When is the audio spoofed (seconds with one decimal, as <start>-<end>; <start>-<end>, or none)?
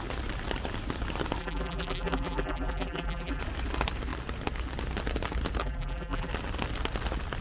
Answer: 1.4-3.4; 5.6-6.3